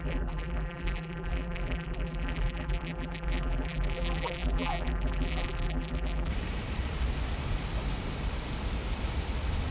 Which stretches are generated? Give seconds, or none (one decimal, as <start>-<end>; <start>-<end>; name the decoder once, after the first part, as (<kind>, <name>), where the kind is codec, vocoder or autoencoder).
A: 0.0-6.3 (vocoder, BigVGAN v2)